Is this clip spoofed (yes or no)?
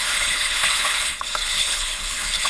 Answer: yes